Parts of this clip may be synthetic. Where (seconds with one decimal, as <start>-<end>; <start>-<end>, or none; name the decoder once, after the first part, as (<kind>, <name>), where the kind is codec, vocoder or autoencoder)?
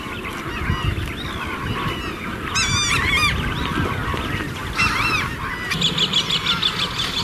none